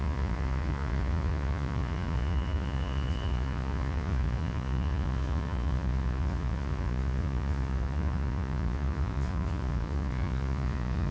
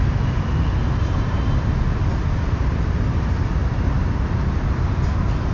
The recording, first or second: second